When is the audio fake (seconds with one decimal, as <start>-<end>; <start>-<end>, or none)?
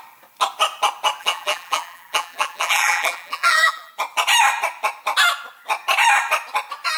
1.2-3.9